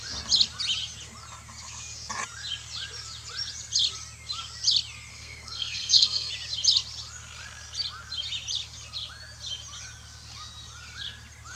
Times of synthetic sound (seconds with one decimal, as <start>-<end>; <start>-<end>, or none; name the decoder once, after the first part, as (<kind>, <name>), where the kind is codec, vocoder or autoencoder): 5.1-6.3 (codec, SNAC)